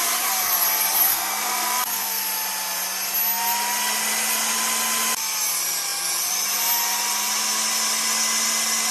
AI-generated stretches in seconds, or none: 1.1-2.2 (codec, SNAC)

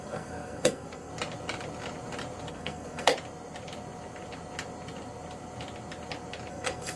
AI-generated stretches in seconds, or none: 0.0-1.1 (codec, SNAC); 2.5-3.1; 6.5-7.0